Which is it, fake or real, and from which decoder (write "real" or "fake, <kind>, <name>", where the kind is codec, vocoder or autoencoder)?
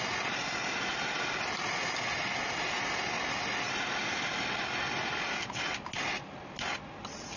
real